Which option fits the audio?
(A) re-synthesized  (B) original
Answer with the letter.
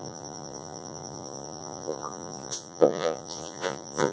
A